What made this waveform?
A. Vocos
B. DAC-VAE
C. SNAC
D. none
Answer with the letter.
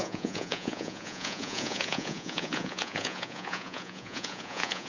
A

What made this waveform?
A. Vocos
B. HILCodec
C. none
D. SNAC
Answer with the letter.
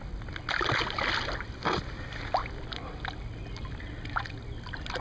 C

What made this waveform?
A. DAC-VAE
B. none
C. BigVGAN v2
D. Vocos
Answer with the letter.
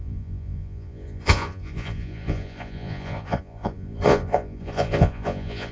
D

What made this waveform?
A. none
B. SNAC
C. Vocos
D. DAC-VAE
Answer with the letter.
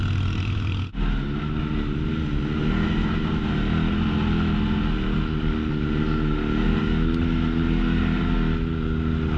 A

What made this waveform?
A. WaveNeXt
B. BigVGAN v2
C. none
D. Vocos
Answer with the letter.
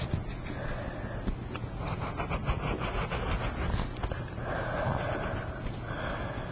C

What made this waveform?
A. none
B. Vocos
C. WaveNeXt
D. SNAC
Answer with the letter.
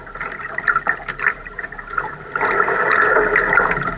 A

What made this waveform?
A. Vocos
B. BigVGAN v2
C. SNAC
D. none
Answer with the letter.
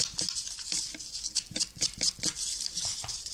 D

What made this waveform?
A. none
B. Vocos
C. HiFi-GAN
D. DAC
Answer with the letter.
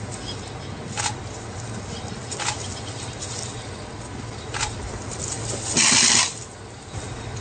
A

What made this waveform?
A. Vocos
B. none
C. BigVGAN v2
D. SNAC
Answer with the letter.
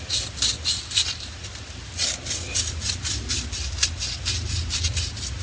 B